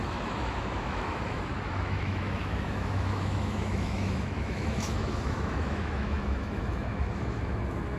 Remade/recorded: remade